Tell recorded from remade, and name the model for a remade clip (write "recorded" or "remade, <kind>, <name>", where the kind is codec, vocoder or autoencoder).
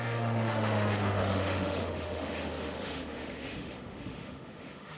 remade, autoencoder, DAC-VAE